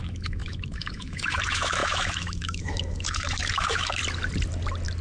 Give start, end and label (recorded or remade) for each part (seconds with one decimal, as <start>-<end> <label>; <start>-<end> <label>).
0.0-4.0 remade; 4.0-5.0 recorded